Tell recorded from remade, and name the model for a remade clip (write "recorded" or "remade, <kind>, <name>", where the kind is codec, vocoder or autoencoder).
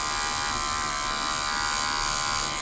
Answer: recorded